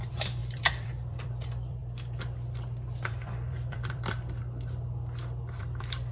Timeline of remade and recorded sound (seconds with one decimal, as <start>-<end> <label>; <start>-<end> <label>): 0.0-1.8 remade; 1.8-3.1 recorded; 3.1-4.4 remade; 4.4-5.6 recorded; 5.6-6.1 remade